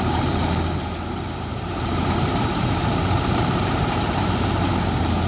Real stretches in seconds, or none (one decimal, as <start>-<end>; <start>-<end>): 0.0-1.5; 4.7-5.3